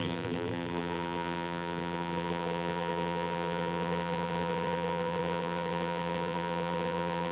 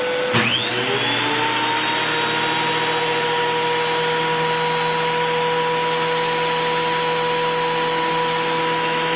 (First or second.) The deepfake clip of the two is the first